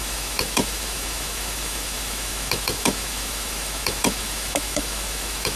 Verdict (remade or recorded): remade